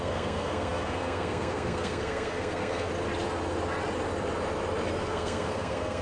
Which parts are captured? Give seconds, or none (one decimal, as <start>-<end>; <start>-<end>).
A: 2.9-5.0